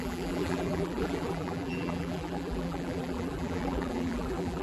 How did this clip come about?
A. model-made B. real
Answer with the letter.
A